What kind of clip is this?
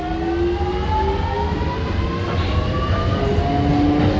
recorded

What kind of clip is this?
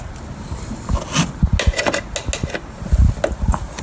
recorded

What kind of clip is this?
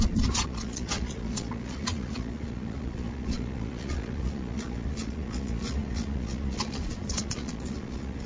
remade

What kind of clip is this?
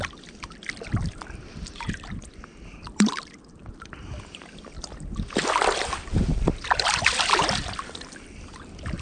recorded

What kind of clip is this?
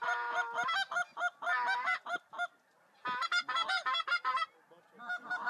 recorded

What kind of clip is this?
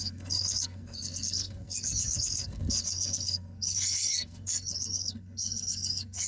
remade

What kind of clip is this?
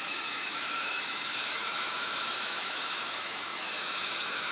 remade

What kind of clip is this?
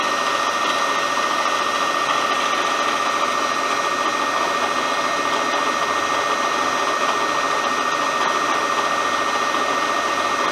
recorded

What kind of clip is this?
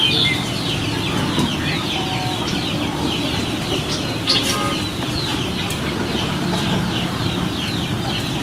recorded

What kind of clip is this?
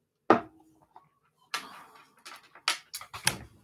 recorded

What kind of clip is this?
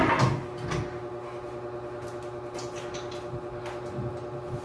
recorded